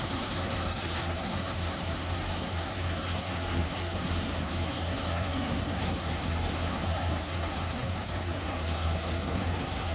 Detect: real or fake fake